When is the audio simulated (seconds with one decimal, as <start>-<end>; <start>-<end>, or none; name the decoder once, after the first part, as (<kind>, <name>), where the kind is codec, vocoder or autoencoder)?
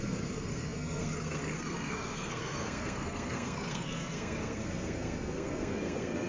0.0-6.3 (codec, SNAC)